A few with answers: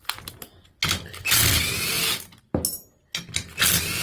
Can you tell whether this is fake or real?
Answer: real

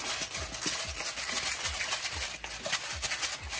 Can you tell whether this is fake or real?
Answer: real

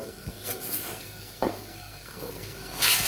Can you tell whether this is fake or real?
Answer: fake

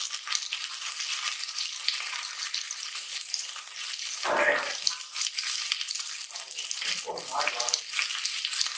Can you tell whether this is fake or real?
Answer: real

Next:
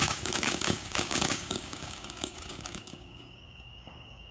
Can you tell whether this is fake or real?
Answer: fake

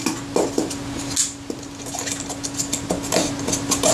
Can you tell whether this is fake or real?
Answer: real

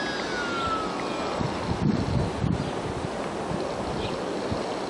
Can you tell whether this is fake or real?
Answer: real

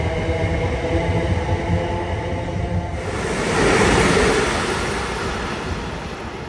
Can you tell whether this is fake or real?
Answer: real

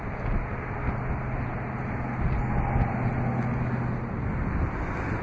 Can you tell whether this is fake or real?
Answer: real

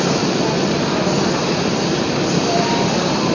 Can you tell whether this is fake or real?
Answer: real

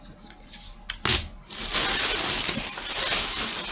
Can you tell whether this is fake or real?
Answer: real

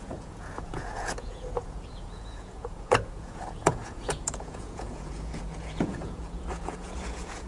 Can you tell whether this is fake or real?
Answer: fake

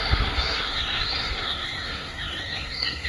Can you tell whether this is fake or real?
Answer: fake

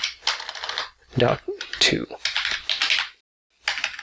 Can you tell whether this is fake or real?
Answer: real